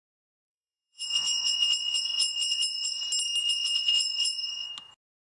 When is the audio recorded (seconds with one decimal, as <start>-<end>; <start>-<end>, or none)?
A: 3.0-3.4; 4.7-5.3